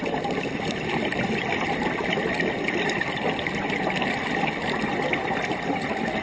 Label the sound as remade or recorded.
recorded